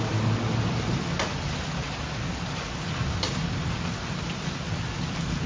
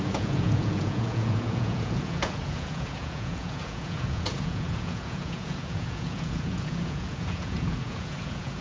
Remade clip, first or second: second